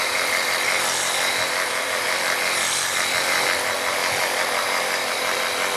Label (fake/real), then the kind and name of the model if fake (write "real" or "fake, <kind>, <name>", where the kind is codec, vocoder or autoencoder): fake, vocoder, BigVGAN v2